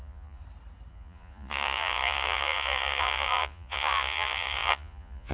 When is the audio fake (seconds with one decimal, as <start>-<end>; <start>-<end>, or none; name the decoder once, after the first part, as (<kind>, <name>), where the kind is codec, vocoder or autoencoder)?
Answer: 0.0-0.4 (vocoder, Vocos); 0.9-5.3